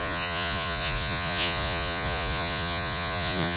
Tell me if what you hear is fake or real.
fake